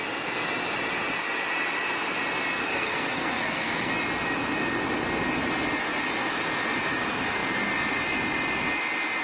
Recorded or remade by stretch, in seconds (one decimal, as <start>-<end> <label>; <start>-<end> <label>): 0.0-2.6 recorded; 2.6-3.9 remade; 3.9-9.2 recorded